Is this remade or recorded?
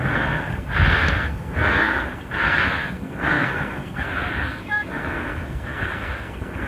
remade